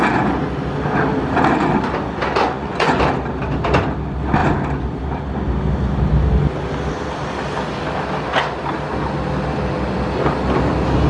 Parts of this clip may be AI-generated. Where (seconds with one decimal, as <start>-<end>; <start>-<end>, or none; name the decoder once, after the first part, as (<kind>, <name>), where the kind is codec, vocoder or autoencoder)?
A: 2.4-3.0 (vocoder, Vocos)